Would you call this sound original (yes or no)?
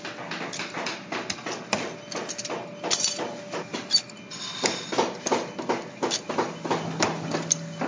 yes